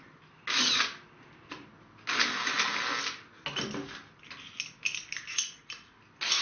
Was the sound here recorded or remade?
recorded